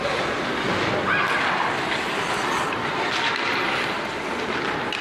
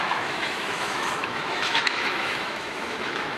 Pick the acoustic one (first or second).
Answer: first